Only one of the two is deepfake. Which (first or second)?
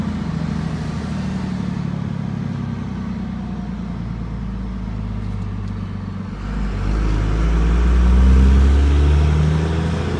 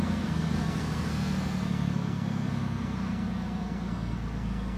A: second